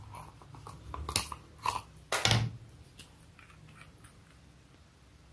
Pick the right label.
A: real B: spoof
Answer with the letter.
A